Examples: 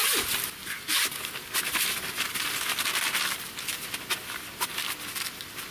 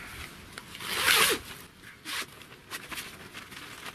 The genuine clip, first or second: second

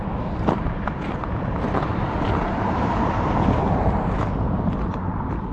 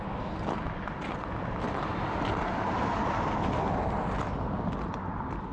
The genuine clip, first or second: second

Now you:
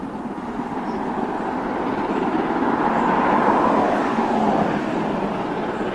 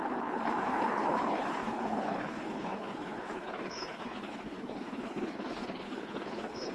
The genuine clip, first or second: first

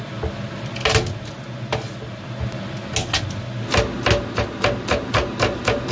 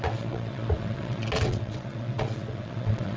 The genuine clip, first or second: first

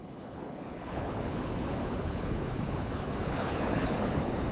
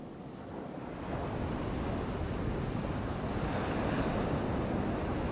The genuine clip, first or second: second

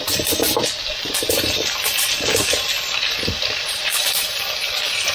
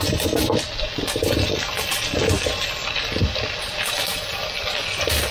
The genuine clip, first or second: second